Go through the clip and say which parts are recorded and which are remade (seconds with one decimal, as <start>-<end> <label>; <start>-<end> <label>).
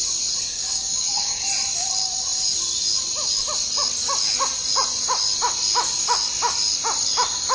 0.0-0.5 recorded; 0.5-1.4 remade; 1.4-7.5 recorded